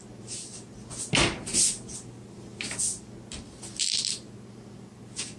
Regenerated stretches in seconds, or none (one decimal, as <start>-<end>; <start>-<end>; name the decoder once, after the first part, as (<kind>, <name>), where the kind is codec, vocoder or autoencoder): none